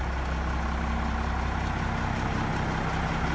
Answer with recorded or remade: recorded